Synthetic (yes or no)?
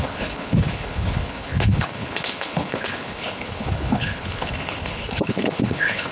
yes